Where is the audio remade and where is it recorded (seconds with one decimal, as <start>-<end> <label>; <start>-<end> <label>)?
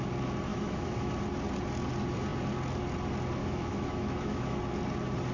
0.0-0.5 recorded; 0.5-1.1 remade; 1.1-3.4 recorded; 3.4-4.6 remade; 4.6-5.3 recorded